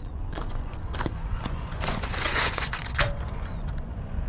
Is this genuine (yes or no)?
no